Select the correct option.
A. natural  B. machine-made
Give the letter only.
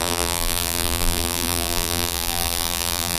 B